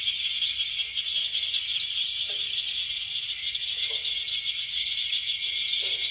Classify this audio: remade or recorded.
recorded